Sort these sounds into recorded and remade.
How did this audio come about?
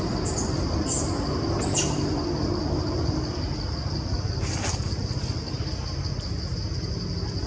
recorded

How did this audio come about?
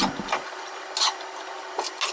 recorded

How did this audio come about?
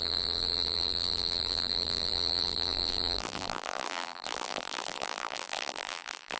remade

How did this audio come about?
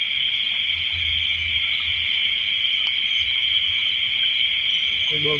recorded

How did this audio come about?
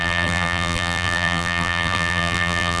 remade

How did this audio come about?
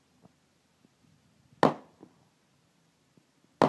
recorded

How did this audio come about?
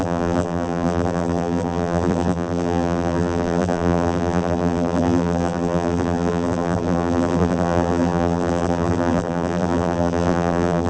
remade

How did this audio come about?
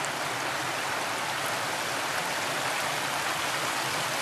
recorded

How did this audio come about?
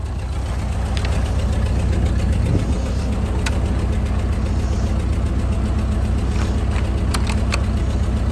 recorded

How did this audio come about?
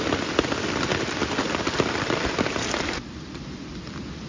remade